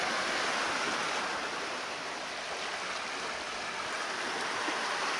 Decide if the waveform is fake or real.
real